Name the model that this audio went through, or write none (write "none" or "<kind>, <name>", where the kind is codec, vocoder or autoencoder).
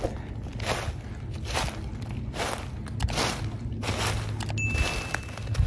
none